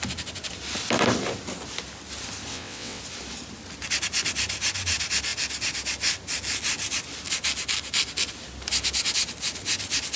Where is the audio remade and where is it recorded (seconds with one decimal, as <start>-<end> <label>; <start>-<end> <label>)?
0.0-2.5 recorded; 2.5-3.0 remade; 3.0-10.2 recorded